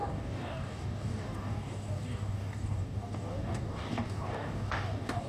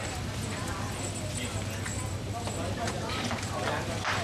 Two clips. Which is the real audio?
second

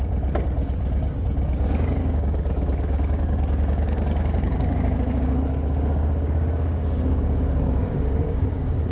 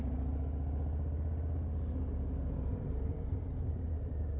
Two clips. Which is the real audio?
second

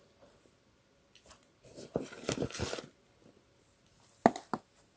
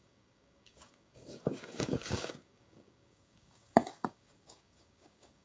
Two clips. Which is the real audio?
first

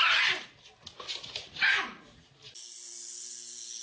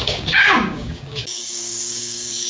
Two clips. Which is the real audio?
first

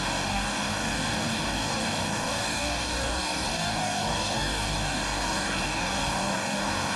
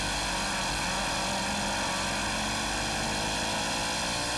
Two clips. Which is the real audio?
second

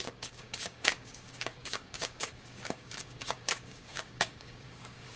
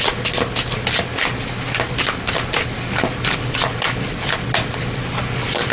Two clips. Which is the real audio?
second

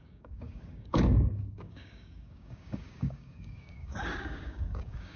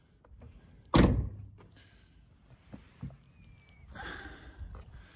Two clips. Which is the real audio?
second